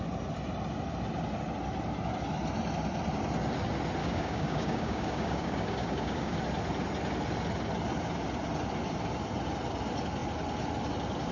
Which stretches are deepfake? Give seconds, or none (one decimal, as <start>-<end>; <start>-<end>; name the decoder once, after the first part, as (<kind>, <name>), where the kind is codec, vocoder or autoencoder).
4.0-6.4 (codec, DAC)